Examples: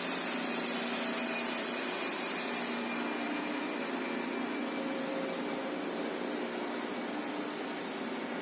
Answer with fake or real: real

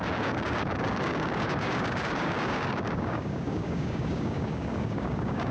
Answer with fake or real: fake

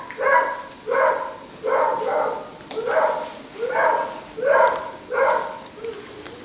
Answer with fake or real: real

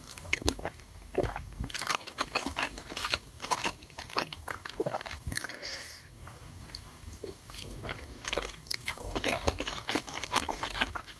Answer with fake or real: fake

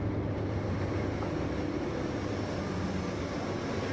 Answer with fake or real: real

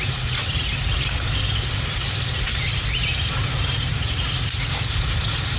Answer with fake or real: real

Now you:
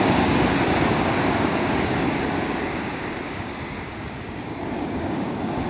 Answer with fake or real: fake